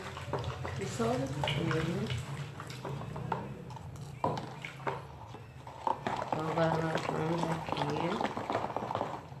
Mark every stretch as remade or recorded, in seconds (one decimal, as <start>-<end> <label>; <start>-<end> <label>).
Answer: 0.0-9.4 recorded